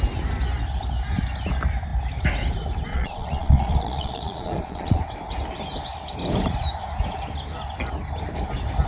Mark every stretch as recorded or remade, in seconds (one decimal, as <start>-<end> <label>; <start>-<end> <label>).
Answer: 0.0-2.9 recorded; 2.9-5.0 remade; 5.0-8.9 recorded